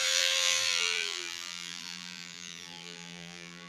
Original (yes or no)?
no